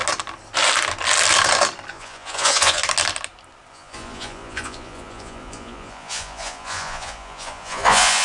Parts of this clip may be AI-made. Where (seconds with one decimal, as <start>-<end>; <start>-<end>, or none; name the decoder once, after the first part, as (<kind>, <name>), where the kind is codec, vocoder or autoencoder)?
1.9-2.8 (vocoder, Vocos); 3.7-8.2